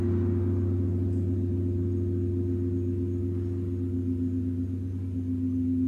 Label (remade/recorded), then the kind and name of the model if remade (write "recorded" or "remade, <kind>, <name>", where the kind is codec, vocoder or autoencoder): recorded